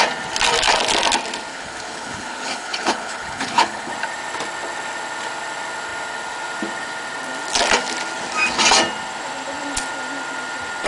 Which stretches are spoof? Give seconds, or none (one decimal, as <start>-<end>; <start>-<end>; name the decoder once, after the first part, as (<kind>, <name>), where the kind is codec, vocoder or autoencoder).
1.5-3.9 (codec, HILCodec)